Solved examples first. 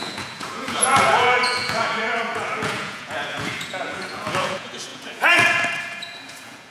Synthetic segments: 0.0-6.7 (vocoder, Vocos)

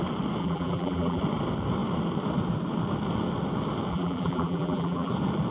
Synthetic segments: 0.4-1.2 (vocoder, BigVGAN v2); 3.9-5.1

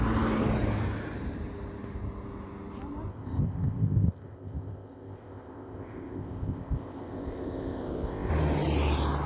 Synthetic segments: 3.1-8.3 (codec, ZipCodec)

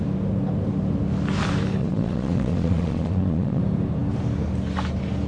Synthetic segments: 1.8-3.6 (vocoder, Vocos)

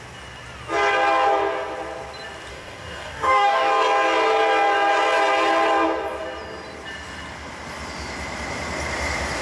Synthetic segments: 2.5-3.7 (codec, DAC)

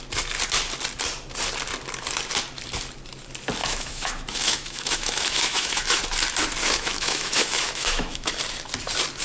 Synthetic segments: 3.6-6.0 (autoencoder, DAC-VAE); 6.6-8.4

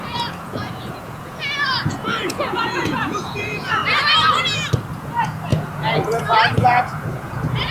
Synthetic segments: 0.0-3.8 (vocoder, Vocos); 4.9-7.7